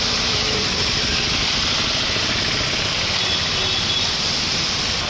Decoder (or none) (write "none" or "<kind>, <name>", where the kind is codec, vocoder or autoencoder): none